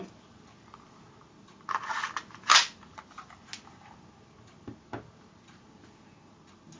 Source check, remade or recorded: recorded